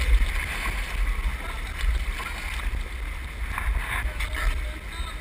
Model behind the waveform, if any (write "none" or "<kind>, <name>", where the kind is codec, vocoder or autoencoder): none